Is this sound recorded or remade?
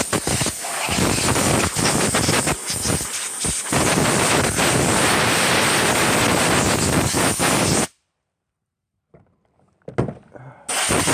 recorded